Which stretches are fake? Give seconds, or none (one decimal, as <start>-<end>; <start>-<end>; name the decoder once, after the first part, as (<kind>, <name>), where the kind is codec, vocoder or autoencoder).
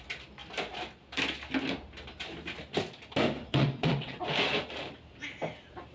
3.5-4.2 (vocoder, WaveNeXt)